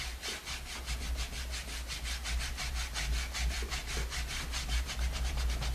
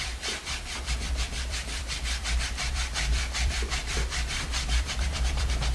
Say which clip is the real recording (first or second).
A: first